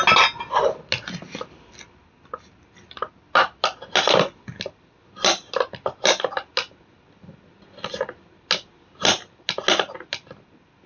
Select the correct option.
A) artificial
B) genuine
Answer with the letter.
B